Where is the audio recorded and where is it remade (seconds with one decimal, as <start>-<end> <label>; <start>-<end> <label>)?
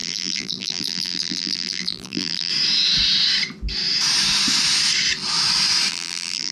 0.0-2.5 remade; 2.5-5.9 recorded; 5.9-6.5 remade